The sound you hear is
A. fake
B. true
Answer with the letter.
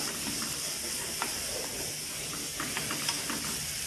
B